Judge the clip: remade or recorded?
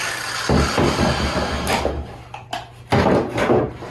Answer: recorded